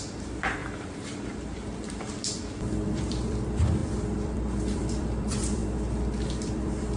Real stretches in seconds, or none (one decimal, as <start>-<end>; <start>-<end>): 5.6-6.3